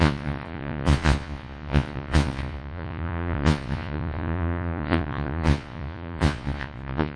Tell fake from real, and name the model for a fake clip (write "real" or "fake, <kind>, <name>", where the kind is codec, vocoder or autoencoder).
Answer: fake, vocoder, Vocos